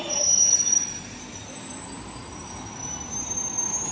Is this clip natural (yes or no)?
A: yes